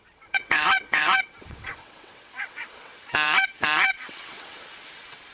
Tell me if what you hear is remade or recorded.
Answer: remade